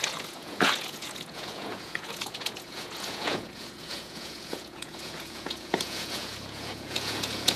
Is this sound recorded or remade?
remade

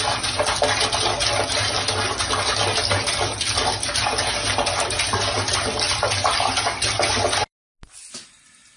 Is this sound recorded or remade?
recorded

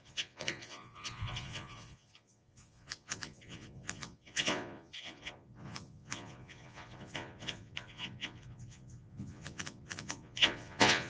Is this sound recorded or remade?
remade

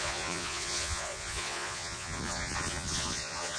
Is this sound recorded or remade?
remade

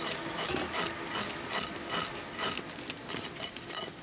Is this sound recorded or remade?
recorded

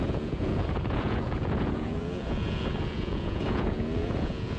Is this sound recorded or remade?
remade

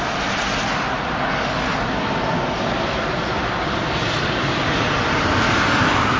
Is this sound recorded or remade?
recorded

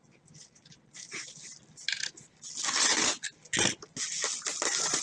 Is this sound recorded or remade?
recorded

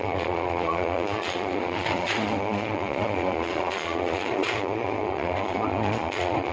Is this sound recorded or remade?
remade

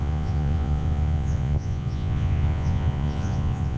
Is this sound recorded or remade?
remade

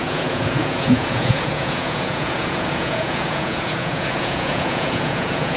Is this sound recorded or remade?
remade